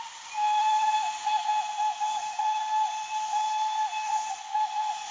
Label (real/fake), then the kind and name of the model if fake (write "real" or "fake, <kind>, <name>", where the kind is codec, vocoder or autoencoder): real